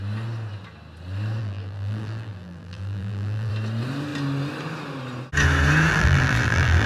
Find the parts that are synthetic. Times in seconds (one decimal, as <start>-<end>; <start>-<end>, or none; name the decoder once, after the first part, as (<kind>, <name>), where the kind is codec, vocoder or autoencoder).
1.4-3.5 (vocoder, BigVGAN v2); 5.9-6.9